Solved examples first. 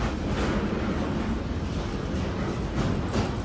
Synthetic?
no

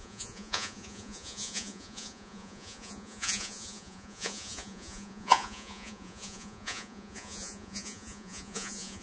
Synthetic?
yes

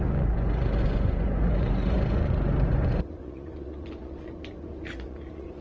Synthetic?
yes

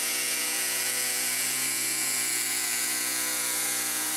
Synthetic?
yes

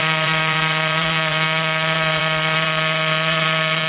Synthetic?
yes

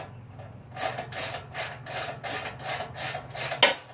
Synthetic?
no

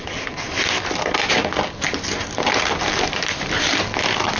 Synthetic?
no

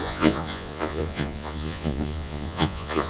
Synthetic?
yes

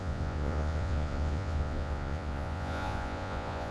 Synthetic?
yes